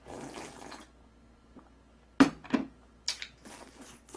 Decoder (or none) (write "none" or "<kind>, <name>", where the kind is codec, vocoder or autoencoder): none